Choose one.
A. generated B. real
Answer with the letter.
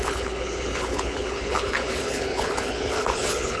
A